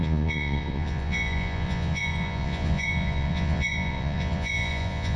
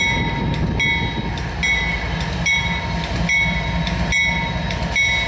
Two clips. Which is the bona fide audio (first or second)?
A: second